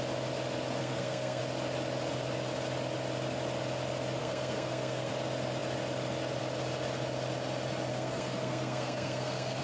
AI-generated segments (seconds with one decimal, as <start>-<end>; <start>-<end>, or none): 0.8-1.4; 4.2-5.1; 7.9-9.6